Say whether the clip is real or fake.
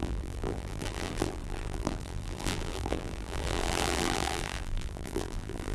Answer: fake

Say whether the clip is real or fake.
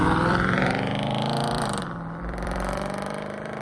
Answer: fake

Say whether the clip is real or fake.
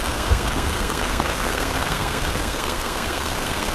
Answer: fake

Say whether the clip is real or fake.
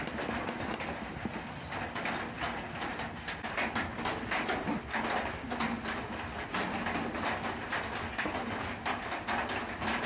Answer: real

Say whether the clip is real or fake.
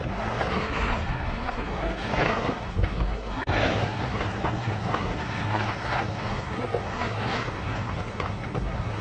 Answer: fake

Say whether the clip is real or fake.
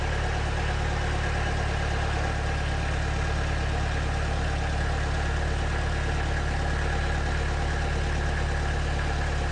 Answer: real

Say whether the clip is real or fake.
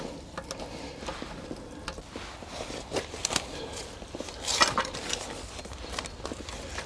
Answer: real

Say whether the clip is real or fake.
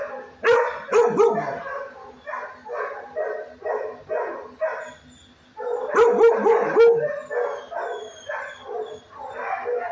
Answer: real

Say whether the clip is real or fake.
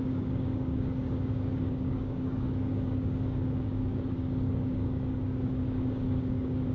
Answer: fake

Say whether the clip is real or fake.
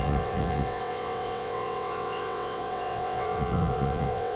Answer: fake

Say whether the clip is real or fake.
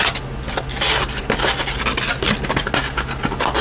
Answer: real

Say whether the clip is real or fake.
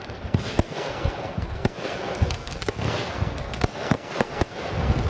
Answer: fake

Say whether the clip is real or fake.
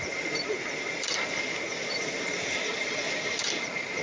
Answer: real